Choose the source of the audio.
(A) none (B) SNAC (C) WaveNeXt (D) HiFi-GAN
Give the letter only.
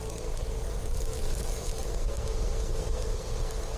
B